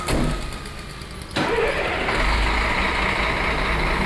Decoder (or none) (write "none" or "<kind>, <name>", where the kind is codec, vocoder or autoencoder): none